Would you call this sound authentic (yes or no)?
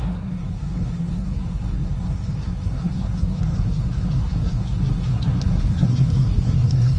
no